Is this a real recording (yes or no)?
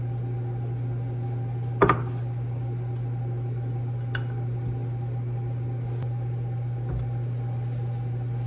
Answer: yes